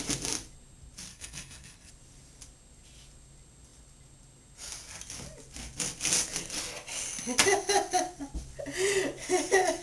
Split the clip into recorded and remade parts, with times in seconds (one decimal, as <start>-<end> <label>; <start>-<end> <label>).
0.0-1.1 recorded; 1.1-1.9 remade; 1.9-9.8 recorded